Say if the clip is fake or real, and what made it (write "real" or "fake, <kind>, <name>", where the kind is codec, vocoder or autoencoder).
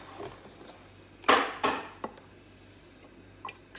real